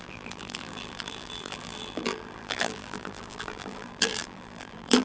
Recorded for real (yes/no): no